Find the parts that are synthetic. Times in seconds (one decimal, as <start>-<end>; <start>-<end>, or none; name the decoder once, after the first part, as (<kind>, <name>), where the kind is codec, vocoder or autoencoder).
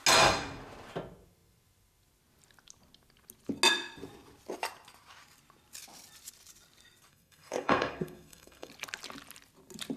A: 7.1-8.7 (codec, SNAC)